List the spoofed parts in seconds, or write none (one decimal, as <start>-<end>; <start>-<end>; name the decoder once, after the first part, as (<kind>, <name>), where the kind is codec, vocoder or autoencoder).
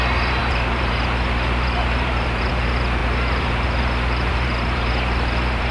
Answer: 0.0-5.7 (vocoder, BigVGAN v2)